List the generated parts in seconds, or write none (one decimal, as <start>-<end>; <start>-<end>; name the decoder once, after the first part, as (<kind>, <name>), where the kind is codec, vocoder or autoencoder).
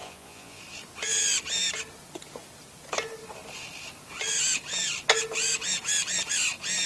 0.0-0.6 (vocoder, Vocos)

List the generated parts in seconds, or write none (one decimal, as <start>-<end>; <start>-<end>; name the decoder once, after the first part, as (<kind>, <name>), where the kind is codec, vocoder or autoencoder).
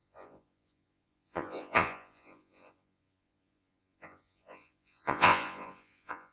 0.0-6.3 (vocoder, Vocos)